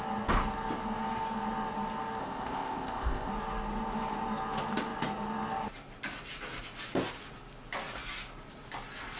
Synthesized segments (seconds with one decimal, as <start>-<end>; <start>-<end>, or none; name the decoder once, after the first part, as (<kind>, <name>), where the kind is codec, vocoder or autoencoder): 2.2-3.3 (codec, ZipCodec)

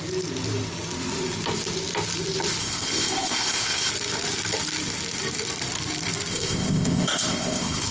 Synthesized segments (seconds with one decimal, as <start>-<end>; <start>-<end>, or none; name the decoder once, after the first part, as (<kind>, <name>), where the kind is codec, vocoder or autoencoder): 2.6-3.9 (codec, ZipCodec); 6.3-7.9

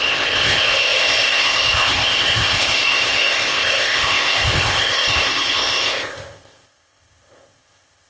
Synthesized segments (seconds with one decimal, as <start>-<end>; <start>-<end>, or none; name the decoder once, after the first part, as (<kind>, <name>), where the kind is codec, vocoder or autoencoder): 0.0-8.1 (codec, ZipCodec)

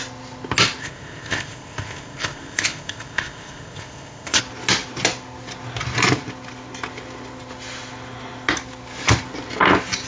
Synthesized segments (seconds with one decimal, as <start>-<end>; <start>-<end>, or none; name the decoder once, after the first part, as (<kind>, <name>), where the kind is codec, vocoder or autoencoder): 0.8-4.4 (codec, ZipCodec)

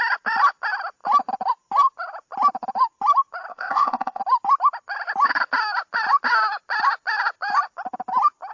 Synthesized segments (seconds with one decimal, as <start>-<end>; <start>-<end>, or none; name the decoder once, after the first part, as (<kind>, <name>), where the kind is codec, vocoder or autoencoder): 3.5-4.2 (codec, ZipCodec)